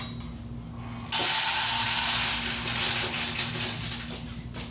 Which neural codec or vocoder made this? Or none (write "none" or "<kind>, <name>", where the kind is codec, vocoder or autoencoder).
none